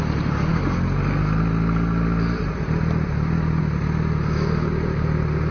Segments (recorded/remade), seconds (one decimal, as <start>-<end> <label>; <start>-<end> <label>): 0.0-5.5 recorded